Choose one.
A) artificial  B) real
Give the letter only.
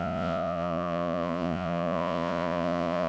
A